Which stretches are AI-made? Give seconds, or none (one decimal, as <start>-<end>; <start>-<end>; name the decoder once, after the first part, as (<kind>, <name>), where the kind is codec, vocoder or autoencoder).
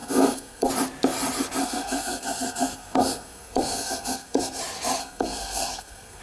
0.0-0.7 (codec, SNAC); 1.6-4.6; 5.0-6.2